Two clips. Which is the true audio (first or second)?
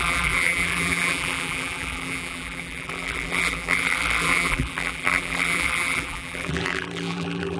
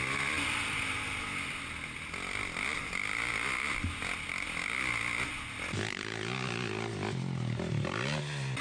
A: second